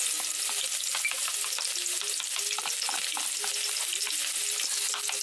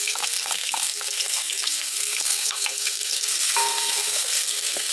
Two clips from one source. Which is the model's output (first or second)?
second